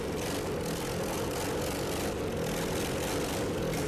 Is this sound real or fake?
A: real